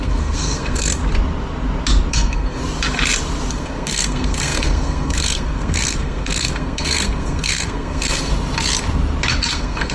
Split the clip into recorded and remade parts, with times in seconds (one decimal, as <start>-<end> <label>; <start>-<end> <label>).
0.0-1.0 remade; 1.0-2.1 recorded; 2.1-2.6 remade; 2.6-3.5 recorded; 3.5-8.3 remade; 8.3-9.5 recorded; 9.5-9.9 remade